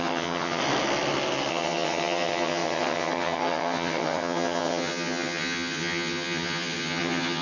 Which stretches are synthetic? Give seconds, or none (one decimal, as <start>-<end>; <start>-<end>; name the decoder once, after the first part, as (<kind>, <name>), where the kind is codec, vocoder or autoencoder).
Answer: 0.0-0.6 (vocoder, HiFi-GAN); 1.5-7.4